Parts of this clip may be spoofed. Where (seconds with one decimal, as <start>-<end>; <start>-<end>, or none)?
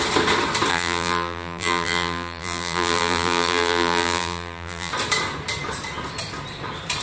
0.7-4.9